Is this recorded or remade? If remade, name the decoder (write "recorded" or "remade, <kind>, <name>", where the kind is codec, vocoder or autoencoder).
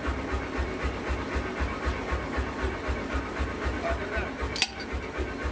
recorded